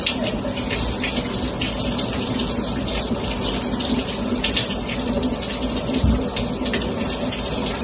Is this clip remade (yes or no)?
no